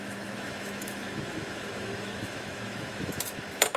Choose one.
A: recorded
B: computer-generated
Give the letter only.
B